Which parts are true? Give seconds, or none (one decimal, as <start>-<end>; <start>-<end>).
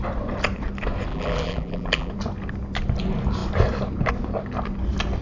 0.0-1.1; 2.1-5.2